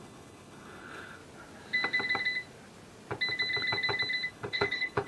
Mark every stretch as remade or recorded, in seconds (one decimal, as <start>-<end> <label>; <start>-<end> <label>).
0.0-1.2 remade; 1.2-4.3 recorded; 4.3-5.1 remade